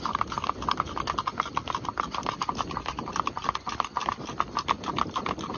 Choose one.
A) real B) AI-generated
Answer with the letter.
A